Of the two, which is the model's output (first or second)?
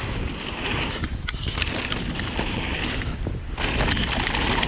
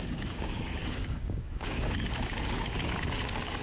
second